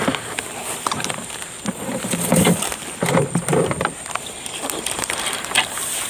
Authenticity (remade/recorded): recorded